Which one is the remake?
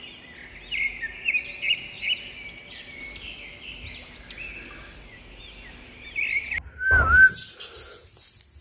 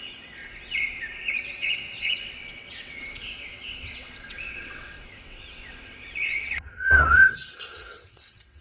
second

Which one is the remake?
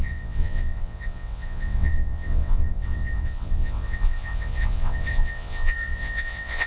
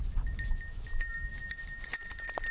first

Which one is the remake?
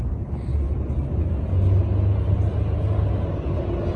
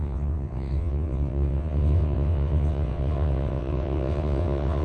second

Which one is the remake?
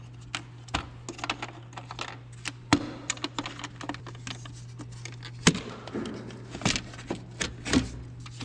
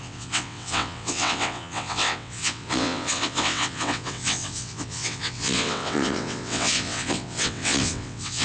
second